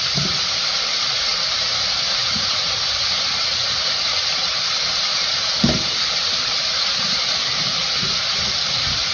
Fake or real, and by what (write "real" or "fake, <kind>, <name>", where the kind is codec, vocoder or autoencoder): fake, vocoder, BigVGAN v2